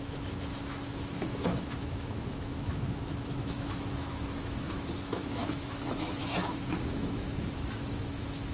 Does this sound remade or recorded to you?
remade